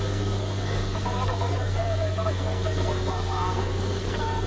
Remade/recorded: remade